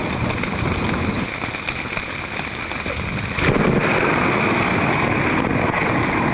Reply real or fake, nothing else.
real